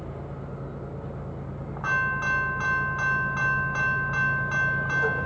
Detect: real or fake real